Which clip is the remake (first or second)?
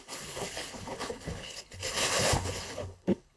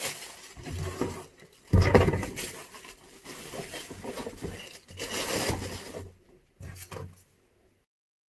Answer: first